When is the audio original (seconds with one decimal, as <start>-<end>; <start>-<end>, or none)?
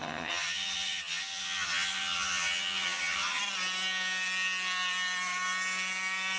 3.4-6.4